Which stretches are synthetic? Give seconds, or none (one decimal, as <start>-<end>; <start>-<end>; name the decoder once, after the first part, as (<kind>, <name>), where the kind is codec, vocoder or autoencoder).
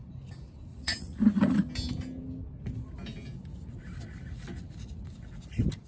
0.7-1.7 (vocoder, Vocos)